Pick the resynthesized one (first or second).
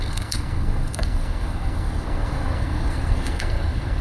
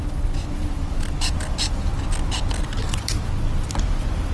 first